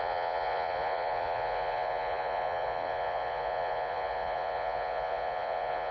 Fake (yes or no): yes